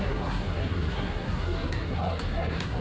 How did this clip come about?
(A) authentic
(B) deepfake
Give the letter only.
B